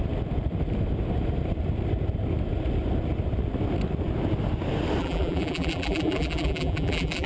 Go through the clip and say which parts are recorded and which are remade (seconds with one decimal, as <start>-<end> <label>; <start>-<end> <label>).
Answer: 0.0-5.0 recorded; 5.0-7.3 remade